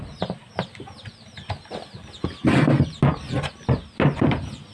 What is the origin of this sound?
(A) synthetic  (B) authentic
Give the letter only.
B